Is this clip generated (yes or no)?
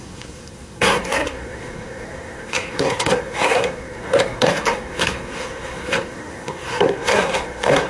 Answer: yes